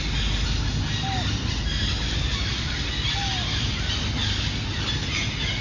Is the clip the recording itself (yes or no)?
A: yes